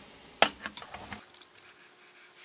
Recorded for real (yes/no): yes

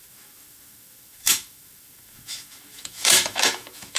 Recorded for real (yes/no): no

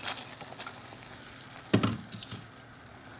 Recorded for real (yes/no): yes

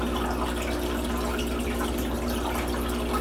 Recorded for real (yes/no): yes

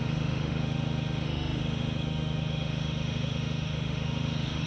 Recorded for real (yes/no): no